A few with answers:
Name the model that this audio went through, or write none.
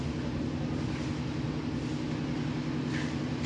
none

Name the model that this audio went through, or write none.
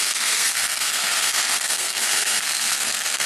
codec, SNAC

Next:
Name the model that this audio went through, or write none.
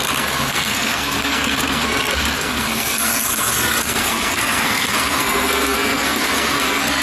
codec, SNAC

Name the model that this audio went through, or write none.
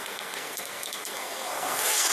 codec, SNAC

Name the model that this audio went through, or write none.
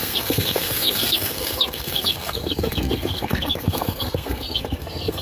codec, SNAC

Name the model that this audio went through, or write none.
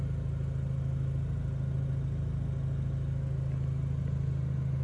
none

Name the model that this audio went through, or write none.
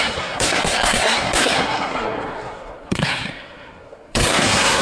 codec, SNAC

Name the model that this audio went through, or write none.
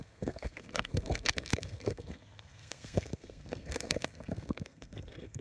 codec, SNAC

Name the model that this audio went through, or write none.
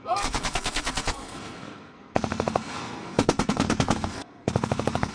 codec, SNAC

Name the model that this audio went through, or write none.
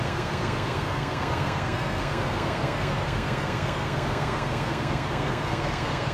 codec, SNAC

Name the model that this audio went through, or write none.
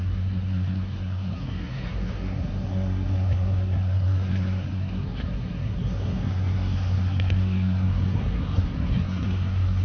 codec, SNAC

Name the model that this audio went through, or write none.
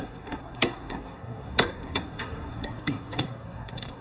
codec, SNAC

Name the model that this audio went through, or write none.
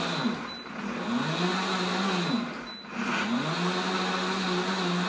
none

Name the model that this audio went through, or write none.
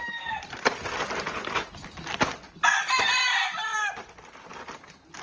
none